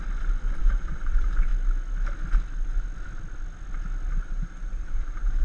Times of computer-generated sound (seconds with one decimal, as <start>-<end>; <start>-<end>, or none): 0.6-1.5; 4.2-5.4